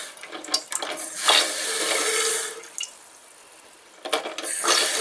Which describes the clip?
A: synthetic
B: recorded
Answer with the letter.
B